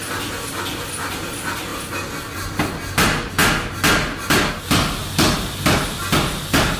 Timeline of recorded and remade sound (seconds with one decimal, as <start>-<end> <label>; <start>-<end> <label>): 0.0-6.8 recorded